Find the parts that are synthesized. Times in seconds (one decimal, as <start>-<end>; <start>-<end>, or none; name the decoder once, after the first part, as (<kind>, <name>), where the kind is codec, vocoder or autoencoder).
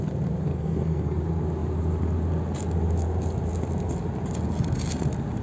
0.5-1.2 (codec, SNAC)